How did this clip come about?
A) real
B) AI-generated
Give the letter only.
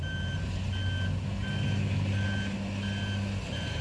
A